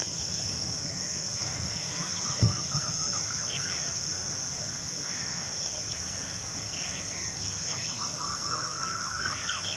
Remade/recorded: remade